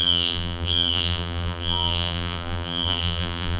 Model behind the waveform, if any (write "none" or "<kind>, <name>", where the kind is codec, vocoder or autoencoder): vocoder, BigVGAN v2